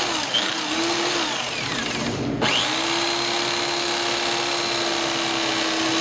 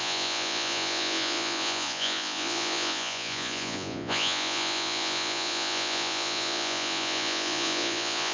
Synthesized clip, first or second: second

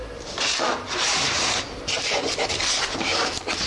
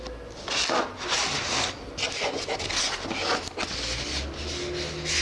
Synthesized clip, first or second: first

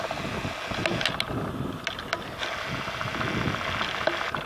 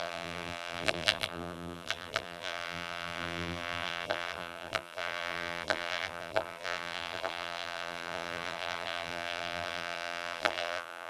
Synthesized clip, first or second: second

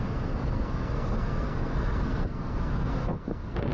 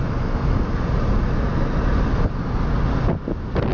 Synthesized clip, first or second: first